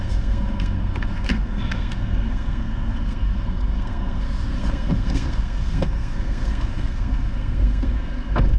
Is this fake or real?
fake